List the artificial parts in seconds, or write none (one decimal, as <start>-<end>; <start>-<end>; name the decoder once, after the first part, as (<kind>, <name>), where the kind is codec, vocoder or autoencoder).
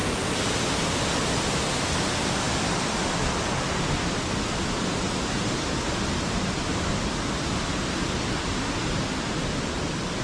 none